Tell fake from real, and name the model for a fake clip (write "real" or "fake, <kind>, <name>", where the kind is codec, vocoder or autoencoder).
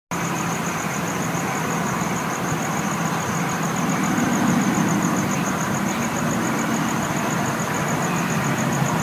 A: real